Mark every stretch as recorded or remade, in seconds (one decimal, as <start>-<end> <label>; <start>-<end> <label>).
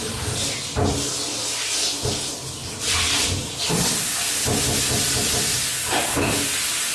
0.0-6.9 recorded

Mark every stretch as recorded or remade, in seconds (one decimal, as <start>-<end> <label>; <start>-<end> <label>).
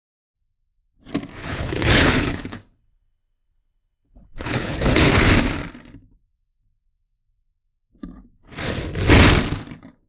0.0-1.4 recorded; 1.4-5.3 remade; 5.3-10.1 recorded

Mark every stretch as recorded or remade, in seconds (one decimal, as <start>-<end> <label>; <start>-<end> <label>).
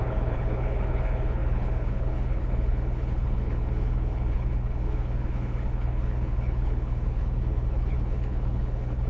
0.0-9.1 remade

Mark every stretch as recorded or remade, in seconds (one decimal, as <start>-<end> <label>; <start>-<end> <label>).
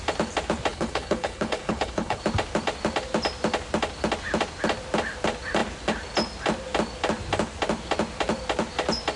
0.0-0.7 recorded; 0.7-2.2 remade; 2.2-9.2 recorded